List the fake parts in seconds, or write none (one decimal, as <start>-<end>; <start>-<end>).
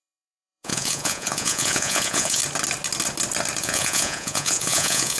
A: 0.0-2.4; 3.6-5.2